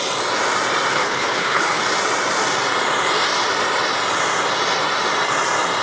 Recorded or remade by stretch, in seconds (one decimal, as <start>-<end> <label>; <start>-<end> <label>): 0.0-0.9 recorded; 0.9-1.8 remade; 1.8-5.8 recorded